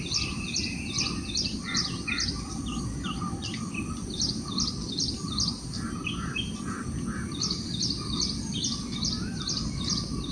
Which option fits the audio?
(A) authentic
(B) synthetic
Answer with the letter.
A